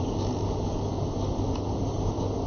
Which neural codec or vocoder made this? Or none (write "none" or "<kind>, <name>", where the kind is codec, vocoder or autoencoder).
none